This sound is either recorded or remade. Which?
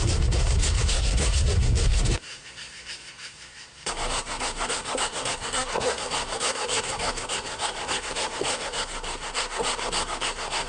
remade